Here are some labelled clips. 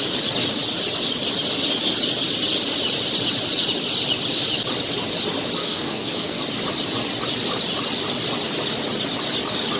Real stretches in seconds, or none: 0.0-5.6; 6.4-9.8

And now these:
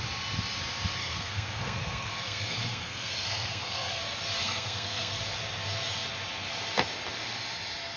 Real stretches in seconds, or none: 0.0-1.0; 4.0-4.4; 5.2-8.0